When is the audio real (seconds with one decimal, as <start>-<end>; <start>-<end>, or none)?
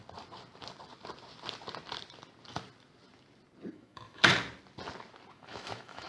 0.0-3.7; 4.3-5.3